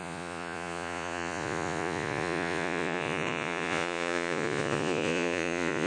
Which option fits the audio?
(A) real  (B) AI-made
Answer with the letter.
B